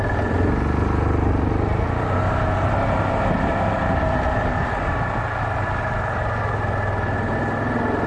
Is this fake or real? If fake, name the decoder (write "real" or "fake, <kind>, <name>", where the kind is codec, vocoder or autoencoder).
real